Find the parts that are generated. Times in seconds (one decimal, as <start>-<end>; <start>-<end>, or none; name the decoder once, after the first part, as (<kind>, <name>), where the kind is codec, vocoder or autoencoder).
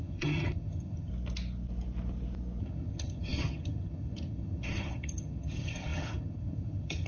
0.0-1.1 (vocoder, HiFi-GAN); 2.6-7.1